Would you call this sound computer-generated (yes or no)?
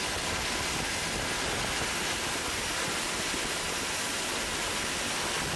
no